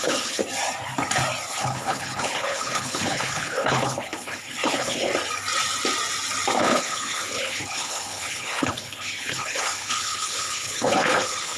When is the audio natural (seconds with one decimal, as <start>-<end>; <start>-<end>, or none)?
0.4-1.5; 5.1-6.6

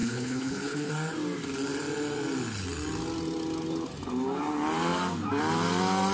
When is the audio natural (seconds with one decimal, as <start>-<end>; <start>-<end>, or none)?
0.9-6.1

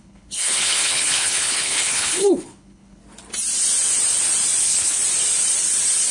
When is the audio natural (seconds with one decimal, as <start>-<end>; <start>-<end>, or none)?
3.0-4.6; 5.0-6.1

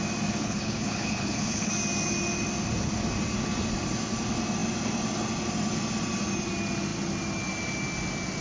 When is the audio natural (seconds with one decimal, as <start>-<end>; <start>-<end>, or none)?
0.0-0.4; 1.7-8.4

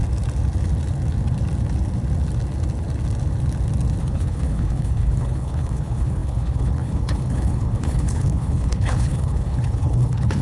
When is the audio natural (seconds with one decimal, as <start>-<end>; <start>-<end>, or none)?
0.0-4.0

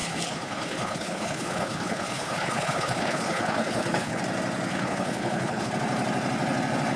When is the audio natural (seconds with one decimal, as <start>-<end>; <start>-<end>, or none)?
4.2-4.7; 5.7-7.0